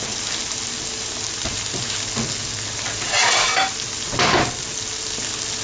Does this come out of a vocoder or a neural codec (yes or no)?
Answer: no